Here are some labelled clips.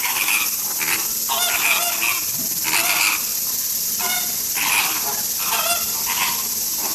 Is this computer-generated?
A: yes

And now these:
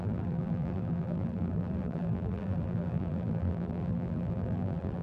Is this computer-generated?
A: yes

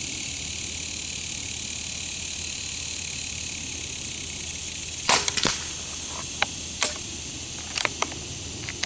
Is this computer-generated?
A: yes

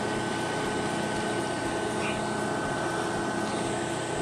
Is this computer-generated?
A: no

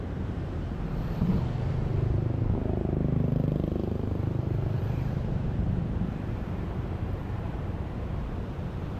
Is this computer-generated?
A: yes